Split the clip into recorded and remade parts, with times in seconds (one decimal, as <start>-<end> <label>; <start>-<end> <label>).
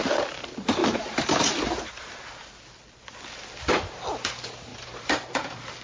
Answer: 0.0-0.8 recorded; 0.8-1.9 remade; 1.9-5.8 recorded